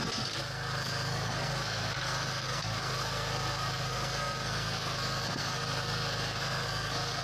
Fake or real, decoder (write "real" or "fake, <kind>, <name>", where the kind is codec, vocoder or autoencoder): fake, codec, SNAC